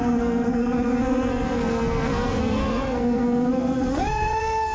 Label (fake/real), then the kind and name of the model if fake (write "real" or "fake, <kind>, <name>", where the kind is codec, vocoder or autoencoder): fake, codec, SNAC